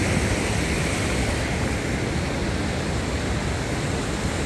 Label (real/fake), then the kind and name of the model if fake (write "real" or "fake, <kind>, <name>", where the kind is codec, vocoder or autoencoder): real